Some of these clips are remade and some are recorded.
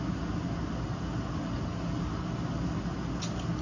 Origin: recorded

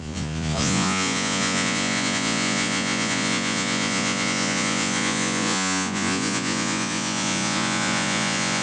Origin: remade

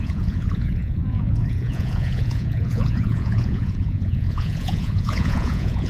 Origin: remade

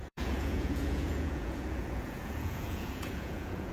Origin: remade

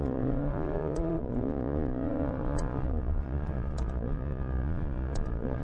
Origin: remade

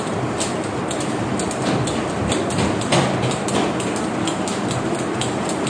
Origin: recorded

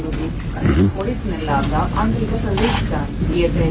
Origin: recorded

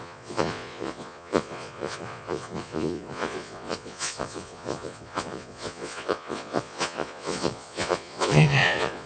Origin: remade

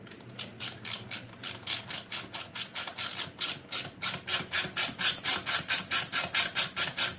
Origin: recorded